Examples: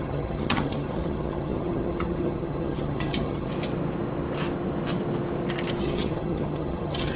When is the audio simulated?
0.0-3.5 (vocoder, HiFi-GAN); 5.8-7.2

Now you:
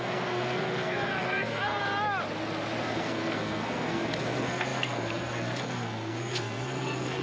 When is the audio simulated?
0.0-1.8 (codec, SNAC); 2.8-7.2

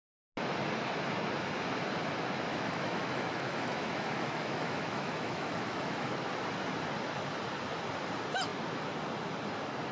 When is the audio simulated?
2.5-6.1 (autoencoder, DAC-VAE)

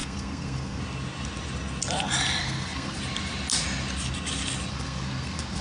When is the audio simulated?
0.0-0.8 (codec, SNAC); 2.4-3.0; 4.7-5.6

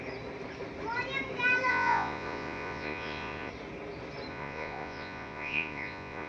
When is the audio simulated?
1.7-3.5 (vocoder, Vocos); 4.3-6.3

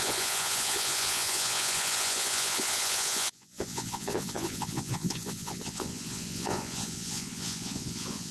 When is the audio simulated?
0.0-8.3 (vocoder, Vocos)